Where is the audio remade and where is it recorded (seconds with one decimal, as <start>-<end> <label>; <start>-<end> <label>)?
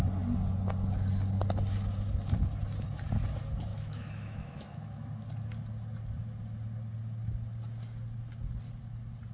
0.0-3.7 recorded; 3.7-5.0 remade; 5.0-9.3 recorded